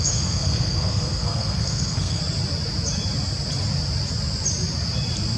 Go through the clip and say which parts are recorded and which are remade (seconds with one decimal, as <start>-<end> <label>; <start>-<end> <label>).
0.0-2.2 remade; 2.2-5.4 recorded